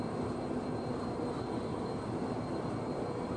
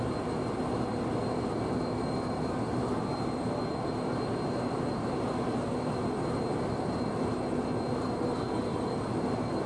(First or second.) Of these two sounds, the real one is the second